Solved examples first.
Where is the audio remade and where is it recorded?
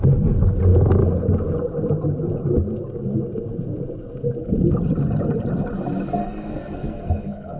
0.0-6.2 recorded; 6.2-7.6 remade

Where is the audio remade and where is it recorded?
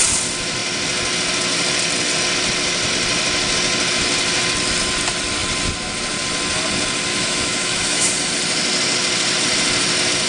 0.0-7.1 recorded; 7.1-8.1 remade; 8.1-10.3 recorded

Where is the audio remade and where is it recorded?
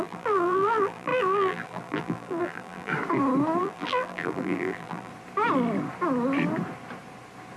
0.0-2.9 remade; 2.9-3.6 recorded; 3.6-5.1 remade; 5.1-7.6 recorded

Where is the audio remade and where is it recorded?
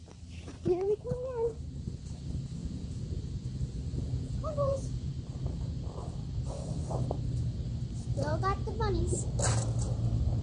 0.0-2.6 recorded; 2.6-3.2 remade; 3.2-3.9 recorded; 3.9-5.1 remade; 5.1-10.4 recorded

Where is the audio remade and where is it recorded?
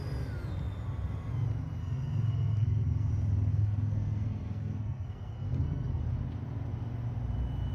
0.0-1.8 recorded; 1.8-3.1 remade; 3.1-3.5 recorded; 3.5-6.0 remade; 6.0-7.7 recorded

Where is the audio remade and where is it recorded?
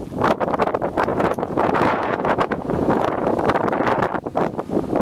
0.0-1.1 recorded; 1.1-3.4 remade; 3.4-5.0 recorded